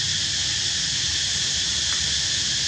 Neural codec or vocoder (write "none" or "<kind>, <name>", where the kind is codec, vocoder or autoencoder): none